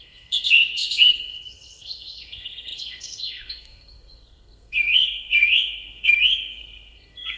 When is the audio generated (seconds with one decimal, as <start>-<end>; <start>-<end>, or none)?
0.0-7.4